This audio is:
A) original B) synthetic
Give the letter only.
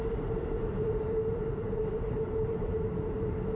B